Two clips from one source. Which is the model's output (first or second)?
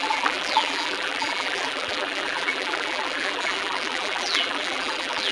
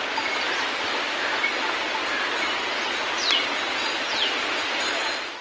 first